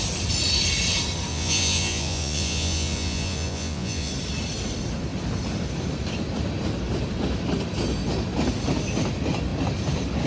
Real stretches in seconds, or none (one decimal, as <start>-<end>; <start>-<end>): 0.0-1.3; 4.1-10.3